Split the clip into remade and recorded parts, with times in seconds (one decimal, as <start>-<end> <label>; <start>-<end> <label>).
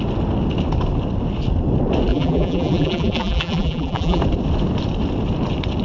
0.0-2.1 recorded; 2.1-4.2 remade; 4.2-5.8 recorded